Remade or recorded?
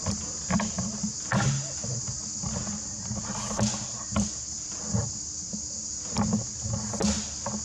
recorded